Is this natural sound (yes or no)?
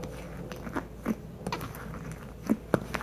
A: yes